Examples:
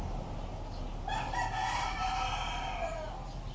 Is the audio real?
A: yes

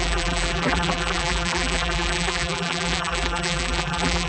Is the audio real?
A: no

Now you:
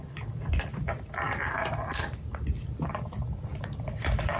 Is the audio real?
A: no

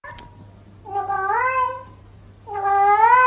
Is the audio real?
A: yes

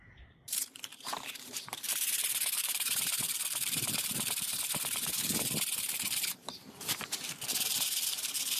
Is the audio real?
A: no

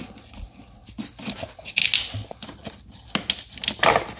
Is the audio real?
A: yes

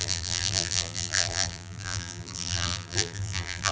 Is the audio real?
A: no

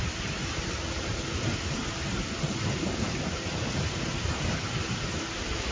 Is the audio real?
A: yes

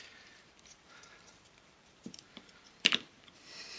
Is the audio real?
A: no